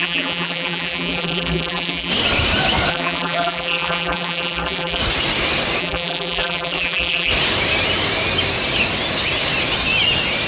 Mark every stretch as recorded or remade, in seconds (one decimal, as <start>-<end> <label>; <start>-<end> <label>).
0.0-2.1 remade; 2.1-2.9 recorded; 2.9-5.0 remade; 5.0-5.8 recorded; 5.8-7.3 remade; 7.3-10.5 recorded